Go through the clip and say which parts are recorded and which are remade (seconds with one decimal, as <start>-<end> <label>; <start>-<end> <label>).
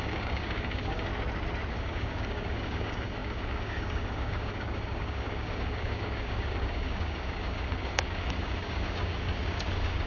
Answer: 0.0-1.1 remade; 1.1-1.7 recorded; 1.7-10.1 remade